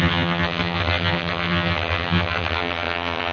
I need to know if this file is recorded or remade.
remade